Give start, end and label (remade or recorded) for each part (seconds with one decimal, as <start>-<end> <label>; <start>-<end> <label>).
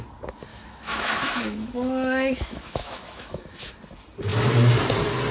0.0-0.5 recorded; 0.5-3.7 remade; 3.7-5.3 recorded